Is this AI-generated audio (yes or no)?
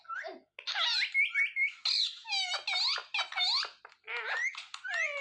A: no